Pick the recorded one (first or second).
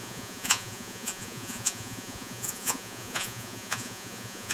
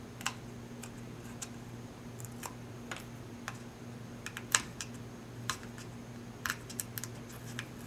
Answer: second